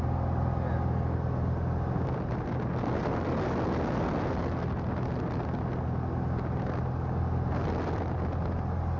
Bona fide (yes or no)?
yes